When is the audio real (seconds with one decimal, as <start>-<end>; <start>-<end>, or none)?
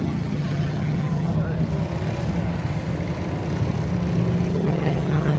1.3-4.5